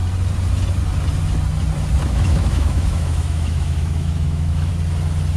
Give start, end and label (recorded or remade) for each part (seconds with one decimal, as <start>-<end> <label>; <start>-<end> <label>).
0.0-2.1 recorded; 2.1-4.7 remade; 4.7-5.4 recorded